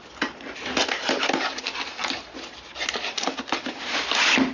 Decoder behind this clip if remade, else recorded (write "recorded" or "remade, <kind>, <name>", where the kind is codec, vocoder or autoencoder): recorded